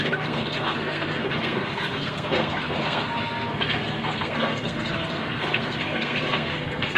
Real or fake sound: fake